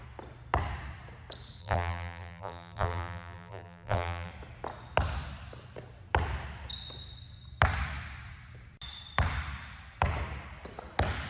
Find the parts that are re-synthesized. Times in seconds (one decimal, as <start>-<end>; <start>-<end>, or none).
1.6-4.3